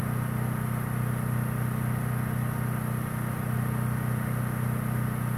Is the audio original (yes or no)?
yes